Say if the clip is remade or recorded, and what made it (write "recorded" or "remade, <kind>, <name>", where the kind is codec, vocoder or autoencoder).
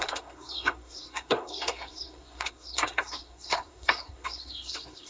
remade, codec, SNAC